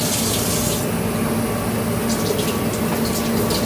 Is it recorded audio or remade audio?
recorded